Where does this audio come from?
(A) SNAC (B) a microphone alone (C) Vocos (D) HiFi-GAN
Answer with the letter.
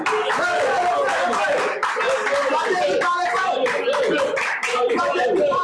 B